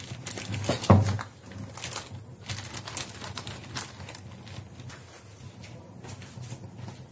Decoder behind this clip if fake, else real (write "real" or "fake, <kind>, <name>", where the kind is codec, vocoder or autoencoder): real